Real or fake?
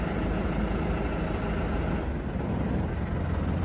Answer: real